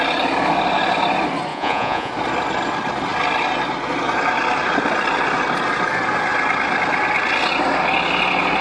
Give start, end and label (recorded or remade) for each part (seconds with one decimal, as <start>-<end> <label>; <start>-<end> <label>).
0.0-1.5 recorded; 1.5-2.1 remade; 2.1-8.6 recorded